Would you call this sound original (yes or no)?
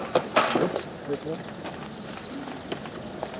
yes